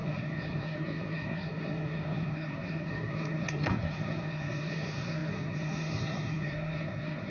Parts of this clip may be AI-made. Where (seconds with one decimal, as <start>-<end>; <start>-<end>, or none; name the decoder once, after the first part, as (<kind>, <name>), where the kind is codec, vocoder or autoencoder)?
0.0-7.3 (codec, SNAC)